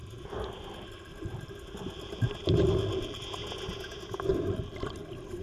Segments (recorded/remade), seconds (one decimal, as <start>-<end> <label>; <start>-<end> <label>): 0.0-3.2 remade; 3.2-4.3 recorded; 4.3-5.4 remade

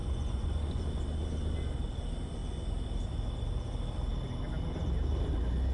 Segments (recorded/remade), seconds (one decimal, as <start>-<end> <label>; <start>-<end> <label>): 0.0-0.8 remade; 0.8-5.7 recorded

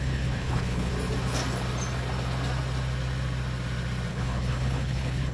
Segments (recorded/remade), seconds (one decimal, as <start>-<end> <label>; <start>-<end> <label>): 0.0-0.9 remade; 0.9-4.1 recorded; 4.1-5.3 remade